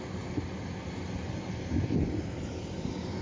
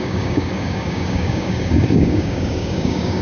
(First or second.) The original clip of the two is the first